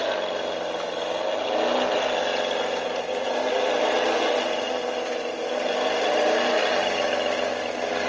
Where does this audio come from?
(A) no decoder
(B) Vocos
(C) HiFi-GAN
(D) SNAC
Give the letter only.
A